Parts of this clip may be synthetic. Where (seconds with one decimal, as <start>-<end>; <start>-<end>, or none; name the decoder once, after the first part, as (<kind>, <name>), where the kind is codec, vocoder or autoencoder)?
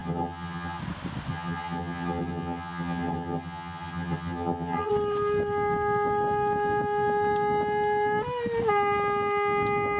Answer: 0.0-0.8 (vocoder, HiFi-GAN); 1.3-4.9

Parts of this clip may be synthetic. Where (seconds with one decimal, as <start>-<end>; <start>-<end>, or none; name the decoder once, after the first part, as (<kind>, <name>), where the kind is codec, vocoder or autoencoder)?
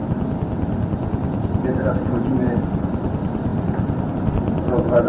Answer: none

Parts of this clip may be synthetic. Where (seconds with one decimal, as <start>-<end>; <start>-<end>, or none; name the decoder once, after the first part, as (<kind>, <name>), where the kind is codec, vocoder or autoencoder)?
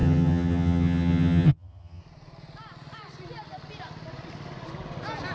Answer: 0.0-2.0 (vocoder, HiFi-GAN)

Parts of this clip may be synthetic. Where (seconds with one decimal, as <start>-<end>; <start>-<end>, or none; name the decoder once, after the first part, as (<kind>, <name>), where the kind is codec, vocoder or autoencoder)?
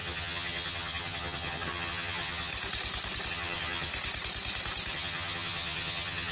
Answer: 0.0-2.5 (vocoder, HiFi-GAN); 3.3-3.9; 4.9-6.3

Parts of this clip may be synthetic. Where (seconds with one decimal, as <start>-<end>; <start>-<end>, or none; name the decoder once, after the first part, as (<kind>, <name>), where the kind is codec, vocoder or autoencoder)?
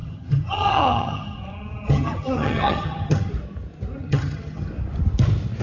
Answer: 0.0-3.3 (vocoder, HiFi-GAN); 4.0-4.7